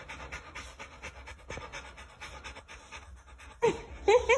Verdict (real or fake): real